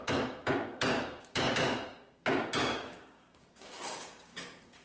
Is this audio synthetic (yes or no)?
yes